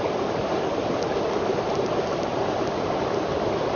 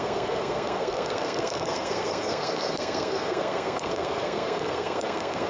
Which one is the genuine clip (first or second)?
first